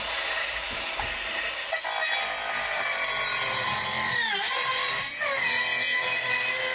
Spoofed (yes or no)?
no